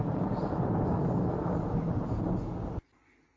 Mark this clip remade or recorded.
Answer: recorded